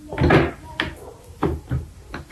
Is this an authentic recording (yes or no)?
yes